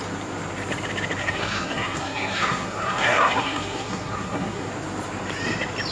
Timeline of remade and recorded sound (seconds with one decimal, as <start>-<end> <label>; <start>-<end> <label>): 0.0-1.2 recorded; 1.2-4.7 remade; 4.7-5.9 recorded